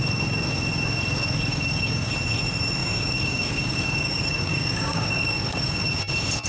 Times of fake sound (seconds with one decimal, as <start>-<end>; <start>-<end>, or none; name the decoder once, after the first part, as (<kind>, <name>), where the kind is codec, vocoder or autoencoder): 1.5-2.1 (codec, DAC); 2.8-5.8